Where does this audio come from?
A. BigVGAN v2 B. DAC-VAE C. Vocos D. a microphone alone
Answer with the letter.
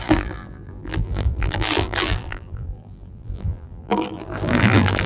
A